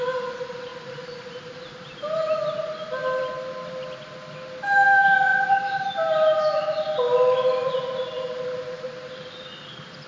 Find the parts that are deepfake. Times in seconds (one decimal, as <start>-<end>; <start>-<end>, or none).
none